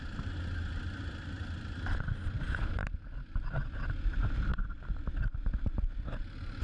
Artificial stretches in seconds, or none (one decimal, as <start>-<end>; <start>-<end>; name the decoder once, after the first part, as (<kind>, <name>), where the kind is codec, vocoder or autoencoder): 4.5-5.8 (vocoder, BigVGAN v2)